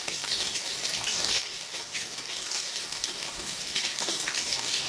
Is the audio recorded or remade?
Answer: remade